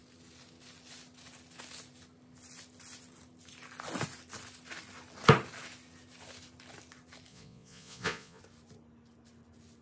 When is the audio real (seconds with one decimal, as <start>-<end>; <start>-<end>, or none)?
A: 0.0-7.3; 8.4-9.8